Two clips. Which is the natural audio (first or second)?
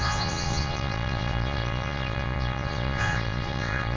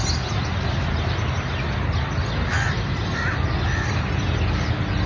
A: second